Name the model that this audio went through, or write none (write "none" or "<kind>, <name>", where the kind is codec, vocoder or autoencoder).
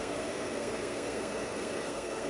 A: codec, SNAC